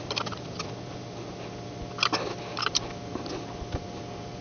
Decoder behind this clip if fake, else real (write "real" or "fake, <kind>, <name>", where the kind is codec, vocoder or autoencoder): real